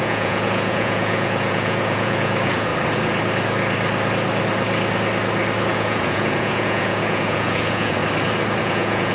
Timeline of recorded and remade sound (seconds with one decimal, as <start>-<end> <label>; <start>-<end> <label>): 0.0-2.7 remade; 2.7-5.7 recorded; 5.7-8.0 remade; 8.0-8.6 recorded; 8.6-9.1 remade

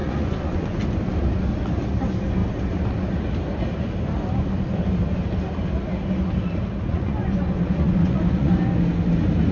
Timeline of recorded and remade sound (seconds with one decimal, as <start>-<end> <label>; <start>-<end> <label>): 0.0-0.8 remade; 0.8-6.9 recorded; 6.9-8.5 remade; 8.5-9.5 recorded